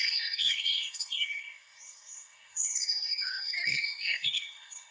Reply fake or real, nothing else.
fake